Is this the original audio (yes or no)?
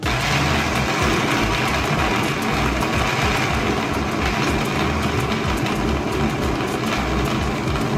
yes